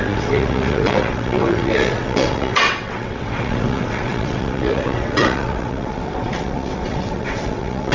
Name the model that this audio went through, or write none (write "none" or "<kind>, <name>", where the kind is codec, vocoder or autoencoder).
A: vocoder, WaveNeXt